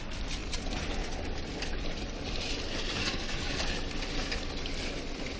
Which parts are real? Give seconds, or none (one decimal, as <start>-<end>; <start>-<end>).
0.0-3.0; 3.6-5.4